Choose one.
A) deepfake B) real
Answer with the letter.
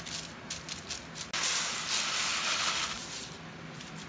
B